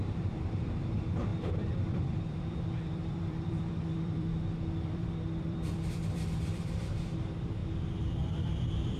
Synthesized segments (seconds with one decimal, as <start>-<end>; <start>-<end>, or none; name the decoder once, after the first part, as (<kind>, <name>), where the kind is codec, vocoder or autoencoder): 0.0-7.6 (vocoder, BigVGAN v2)